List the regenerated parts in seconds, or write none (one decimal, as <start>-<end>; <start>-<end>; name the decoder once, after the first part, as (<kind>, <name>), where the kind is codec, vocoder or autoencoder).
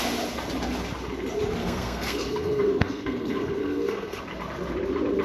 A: 1.6-4.2 (codec, SNAC)